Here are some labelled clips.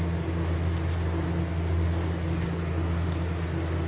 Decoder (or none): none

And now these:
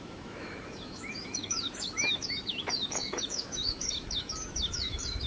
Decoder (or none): autoencoder, DAC-VAE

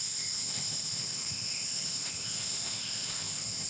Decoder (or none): codec, ZipCodec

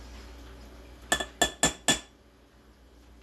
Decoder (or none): none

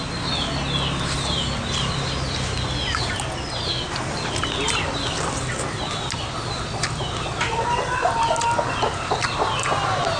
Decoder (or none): none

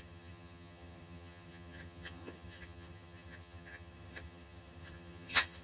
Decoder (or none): vocoder, HiFi-GAN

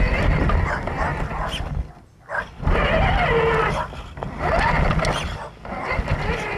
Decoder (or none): none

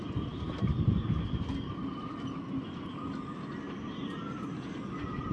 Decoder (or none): none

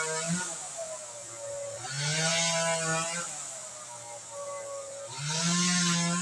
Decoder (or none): none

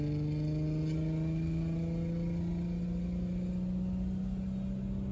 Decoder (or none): none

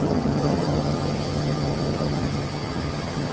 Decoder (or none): vocoder, HiFi-GAN